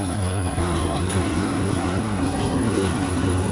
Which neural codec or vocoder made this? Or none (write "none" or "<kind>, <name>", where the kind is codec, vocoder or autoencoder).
codec, SNAC